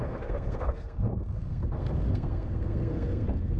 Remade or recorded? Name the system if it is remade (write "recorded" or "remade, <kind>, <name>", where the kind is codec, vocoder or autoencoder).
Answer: remade, codec, SNAC